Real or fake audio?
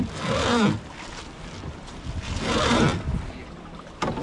real